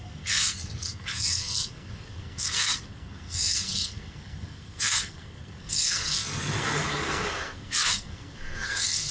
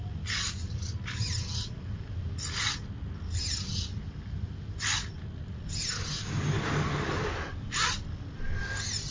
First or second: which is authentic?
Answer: second